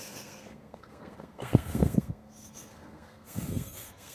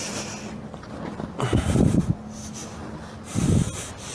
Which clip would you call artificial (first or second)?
first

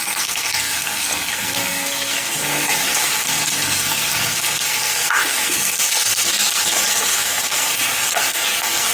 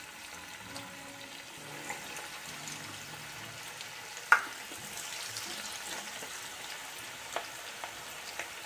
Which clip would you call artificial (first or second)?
first